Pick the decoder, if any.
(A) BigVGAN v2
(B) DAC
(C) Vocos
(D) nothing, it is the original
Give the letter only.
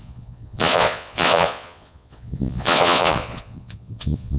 C